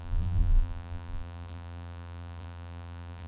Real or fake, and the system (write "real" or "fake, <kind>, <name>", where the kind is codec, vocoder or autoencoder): fake, vocoder, BigVGAN v2